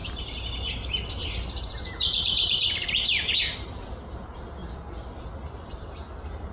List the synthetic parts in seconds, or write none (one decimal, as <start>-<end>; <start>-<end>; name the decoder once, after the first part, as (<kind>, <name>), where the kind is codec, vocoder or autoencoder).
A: 0.0-2.7 (vocoder, BigVGAN v2)